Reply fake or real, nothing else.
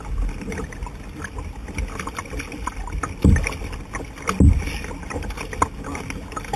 real